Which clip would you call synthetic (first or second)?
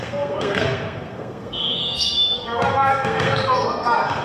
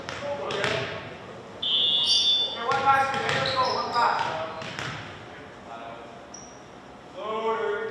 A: first